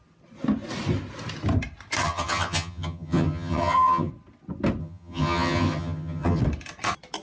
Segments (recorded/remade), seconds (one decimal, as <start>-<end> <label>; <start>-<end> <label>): 0.0-2.0 recorded; 2.0-4.1 remade; 4.1-4.8 recorded; 4.8-6.4 remade; 6.4-7.2 recorded